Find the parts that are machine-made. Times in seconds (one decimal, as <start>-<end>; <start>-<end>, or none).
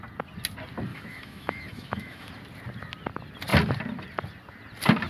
0.9-2.3